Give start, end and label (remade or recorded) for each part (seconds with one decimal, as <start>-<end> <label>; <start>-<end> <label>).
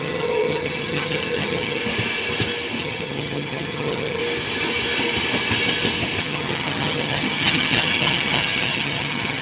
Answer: 0.0-1.8 remade; 1.8-2.8 recorded; 2.8-4.2 remade; 4.2-6.2 recorded; 6.2-9.4 remade